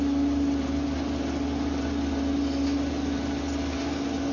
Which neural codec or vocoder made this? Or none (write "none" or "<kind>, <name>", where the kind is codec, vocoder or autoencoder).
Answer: none